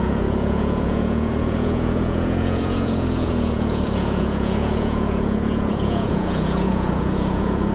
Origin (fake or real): fake